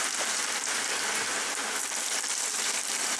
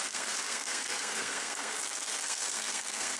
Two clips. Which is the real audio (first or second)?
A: first